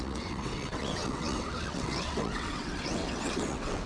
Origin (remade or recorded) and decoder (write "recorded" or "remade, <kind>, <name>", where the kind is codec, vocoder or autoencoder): remade, vocoder, WaveNeXt